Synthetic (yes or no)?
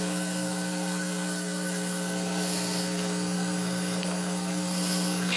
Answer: yes